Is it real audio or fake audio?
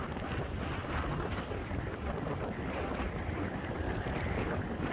fake